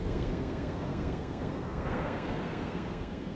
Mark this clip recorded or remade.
remade